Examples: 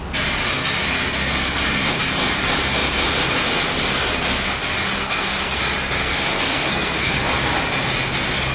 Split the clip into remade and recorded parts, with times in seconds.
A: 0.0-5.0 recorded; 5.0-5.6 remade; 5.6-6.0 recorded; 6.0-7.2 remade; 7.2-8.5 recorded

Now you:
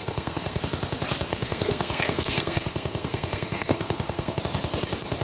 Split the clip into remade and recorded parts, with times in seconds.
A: 0.0-0.6 remade; 0.6-1.3 recorded; 1.3-4.4 remade; 4.4-5.2 recorded

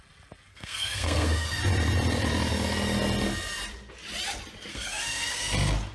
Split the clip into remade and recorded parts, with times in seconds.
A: 0.0-0.5 recorded; 0.5-1.6 remade; 1.6-4.7 recorded; 4.7-5.4 remade; 5.4-5.9 recorded

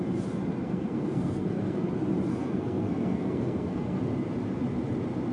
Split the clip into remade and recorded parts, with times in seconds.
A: 0.0-0.6 recorded; 0.6-1.9 remade; 1.9-2.3 recorded; 2.3-4.0 remade; 4.0-5.3 recorded